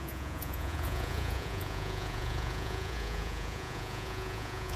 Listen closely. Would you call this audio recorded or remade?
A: remade